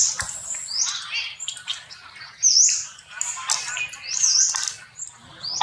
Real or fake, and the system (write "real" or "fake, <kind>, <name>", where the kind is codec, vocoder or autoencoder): real